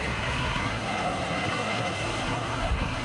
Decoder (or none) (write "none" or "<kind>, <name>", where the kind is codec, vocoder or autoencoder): codec, SNAC